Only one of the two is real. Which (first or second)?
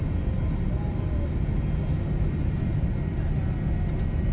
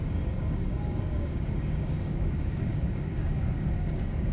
first